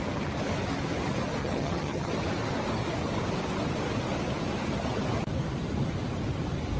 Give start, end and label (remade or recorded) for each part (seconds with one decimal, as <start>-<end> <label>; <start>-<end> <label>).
0.0-1.4 recorded; 1.4-2.1 remade; 2.1-6.8 recorded